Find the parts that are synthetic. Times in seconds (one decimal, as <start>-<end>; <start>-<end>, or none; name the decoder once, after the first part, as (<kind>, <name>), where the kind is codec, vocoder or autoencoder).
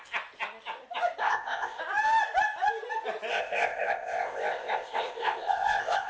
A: 1.2-1.8 (codec, ZipCodec); 3.3-6.1